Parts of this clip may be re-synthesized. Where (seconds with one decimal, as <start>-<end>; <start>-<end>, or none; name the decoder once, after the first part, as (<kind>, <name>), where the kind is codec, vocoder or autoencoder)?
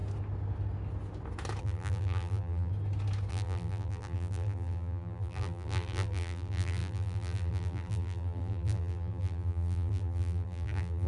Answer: 1.6-2.7 (vocoder, BigVGAN v2); 3.3-11.1